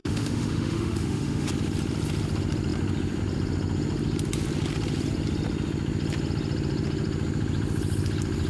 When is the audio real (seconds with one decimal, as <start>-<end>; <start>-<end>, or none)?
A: 1.5-8.5